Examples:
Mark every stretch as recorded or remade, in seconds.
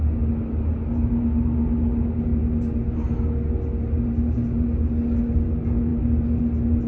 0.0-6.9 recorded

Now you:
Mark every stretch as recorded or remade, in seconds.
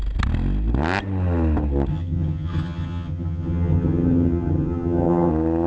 0.0-1.9 recorded; 1.9-5.3 remade; 5.3-5.7 recorded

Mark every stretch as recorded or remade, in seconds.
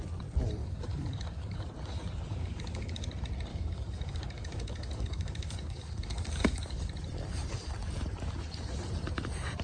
0.0-0.6 recorded; 0.6-1.7 remade; 1.7-2.3 recorded; 2.3-3.1 remade; 3.1-3.5 recorded; 3.5-6.8 remade; 6.8-9.6 recorded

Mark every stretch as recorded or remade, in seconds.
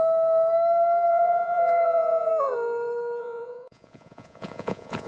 0.0-1.1 recorded; 1.1-2.3 remade; 2.3-3.2 recorded; 3.2-5.1 remade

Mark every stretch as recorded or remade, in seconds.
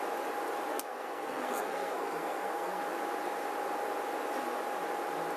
0.0-0.7 recorded; 0.7-2.8 remade; 2.8-5.4 recorded